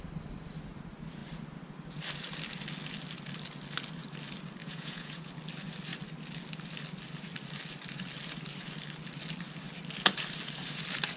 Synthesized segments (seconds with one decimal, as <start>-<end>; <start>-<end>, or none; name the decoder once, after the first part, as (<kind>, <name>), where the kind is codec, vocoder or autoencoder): 4.6-5.3 (vocoder, Vocos)